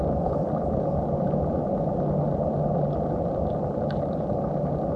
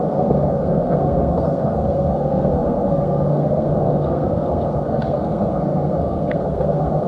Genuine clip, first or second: first